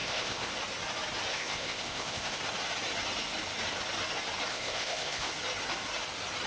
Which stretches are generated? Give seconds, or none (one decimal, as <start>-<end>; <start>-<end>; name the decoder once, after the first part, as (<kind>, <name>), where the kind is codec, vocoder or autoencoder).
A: 0.0-0.5 (codec, ZipCodec); 1.3-2.4; 4.5-5.3